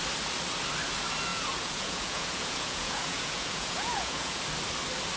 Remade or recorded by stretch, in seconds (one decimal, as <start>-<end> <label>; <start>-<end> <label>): 0.0-1.3 recorded; 1.3-4.4 remade; 4.4-5.2 recorded